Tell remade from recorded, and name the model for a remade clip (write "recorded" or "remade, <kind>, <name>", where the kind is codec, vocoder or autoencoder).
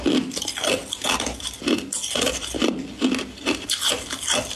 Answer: recorded